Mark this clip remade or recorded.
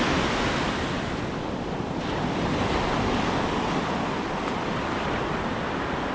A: recorded